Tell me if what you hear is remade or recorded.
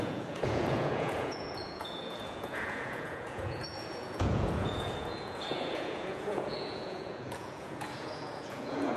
remade